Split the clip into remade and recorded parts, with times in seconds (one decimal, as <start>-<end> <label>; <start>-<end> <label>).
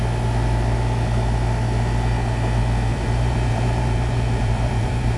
0.0-2.9 recorded; 2.9-5.2 remade